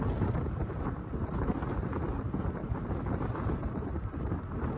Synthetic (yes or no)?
no